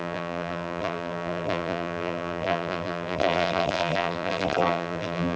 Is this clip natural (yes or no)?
no